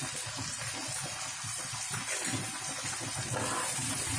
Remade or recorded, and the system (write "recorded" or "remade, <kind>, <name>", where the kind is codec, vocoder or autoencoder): recorded